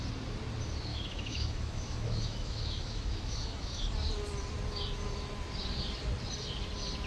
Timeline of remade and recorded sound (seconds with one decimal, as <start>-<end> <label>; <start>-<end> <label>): 0.0-0.9 recorded; 0.9-3.8 remade; 3.8-7.1 recorded